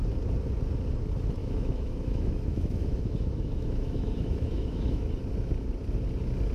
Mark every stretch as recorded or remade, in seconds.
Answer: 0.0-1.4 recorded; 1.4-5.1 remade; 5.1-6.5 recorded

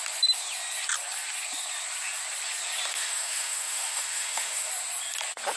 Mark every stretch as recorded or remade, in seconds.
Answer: 0.0-2.9 recorded; 2.9-4.7 remade; 4.7-5.6 recorded

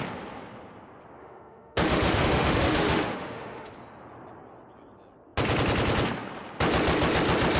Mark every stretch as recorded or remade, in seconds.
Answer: 0.0-1.2 recorded; 1.2-3.7 remade; 3.7-7.6 recorded

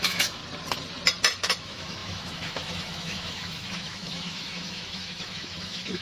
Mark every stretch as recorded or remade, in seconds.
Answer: 0.0-0.4 remade; 0.4-1.6 recorded; 1.6-6.0 remade

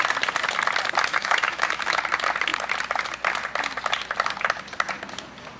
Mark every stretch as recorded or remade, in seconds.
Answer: 0.0-1.1 recorded; 1.1-2.0 remade; 2.0-5.6 recorded